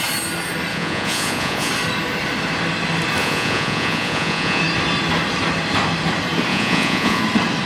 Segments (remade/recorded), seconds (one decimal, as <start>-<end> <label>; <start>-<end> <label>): 0.0-0.7 recorded; 0.7-1.7 remade; 1.7-3.2 recorded; 3.2-4.6 remade; 4.6-6.5 recorded; 6.5-7.2 remade; 7.2-7.7 recorded